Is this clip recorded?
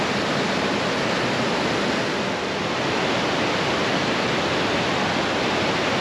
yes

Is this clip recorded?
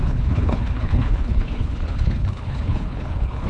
no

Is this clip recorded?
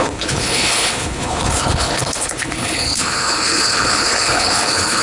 no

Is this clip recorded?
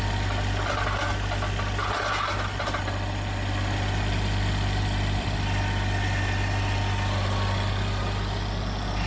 yes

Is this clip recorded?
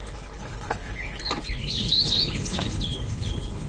no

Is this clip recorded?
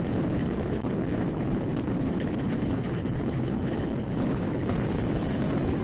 no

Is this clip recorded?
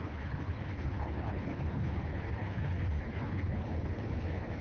no